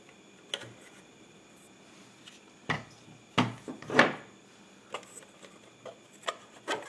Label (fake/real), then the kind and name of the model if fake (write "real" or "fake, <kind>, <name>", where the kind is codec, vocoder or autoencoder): real